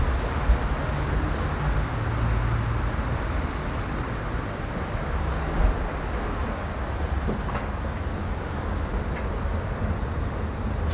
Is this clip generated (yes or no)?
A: no